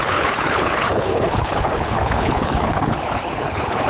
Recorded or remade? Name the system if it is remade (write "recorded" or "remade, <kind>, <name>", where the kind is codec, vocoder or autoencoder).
remade, codec, HILCodec